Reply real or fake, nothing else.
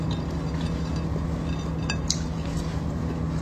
real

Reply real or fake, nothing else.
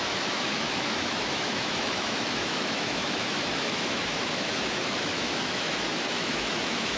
fake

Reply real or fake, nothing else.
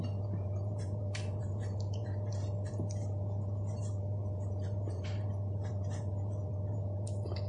fake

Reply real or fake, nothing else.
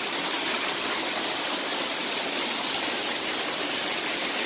real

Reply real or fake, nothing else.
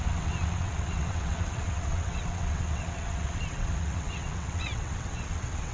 fake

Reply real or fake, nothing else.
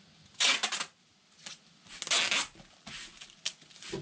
real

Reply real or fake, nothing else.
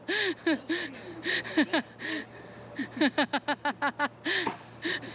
real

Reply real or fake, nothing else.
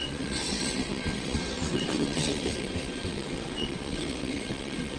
fake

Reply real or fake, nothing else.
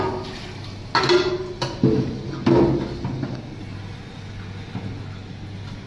real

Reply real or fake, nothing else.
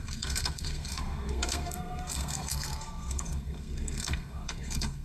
fake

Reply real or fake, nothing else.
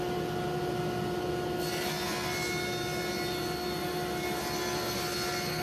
real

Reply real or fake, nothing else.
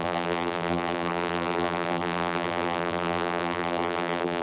fake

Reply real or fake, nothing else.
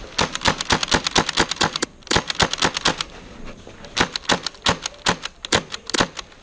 real